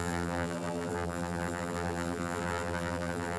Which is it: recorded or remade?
remade